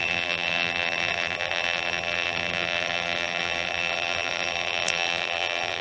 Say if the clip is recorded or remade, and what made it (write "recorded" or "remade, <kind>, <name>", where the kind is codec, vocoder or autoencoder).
remade, vocoder, BigVGAN v2